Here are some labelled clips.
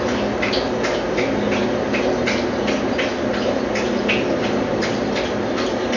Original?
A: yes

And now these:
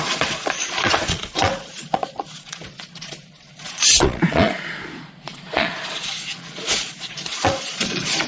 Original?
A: no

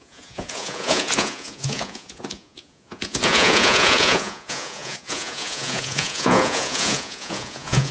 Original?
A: no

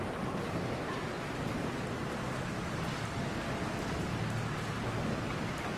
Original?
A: yes